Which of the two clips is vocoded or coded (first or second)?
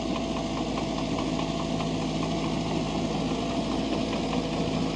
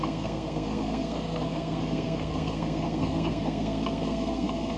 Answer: second